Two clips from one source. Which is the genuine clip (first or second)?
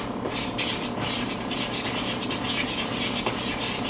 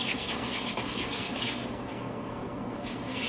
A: first